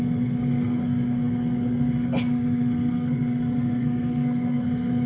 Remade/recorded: remade